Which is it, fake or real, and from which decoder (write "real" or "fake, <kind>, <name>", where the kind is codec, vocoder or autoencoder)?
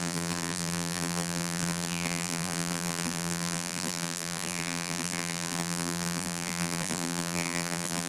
fake, vocoder, BigVGAN v2